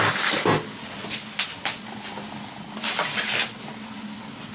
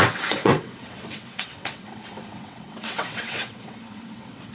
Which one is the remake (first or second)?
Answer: second